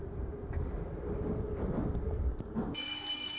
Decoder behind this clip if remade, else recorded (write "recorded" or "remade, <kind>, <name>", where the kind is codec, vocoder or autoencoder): recorded